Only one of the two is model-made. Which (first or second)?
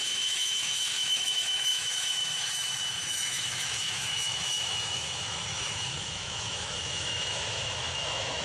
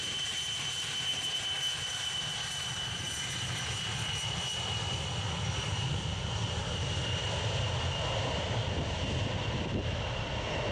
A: first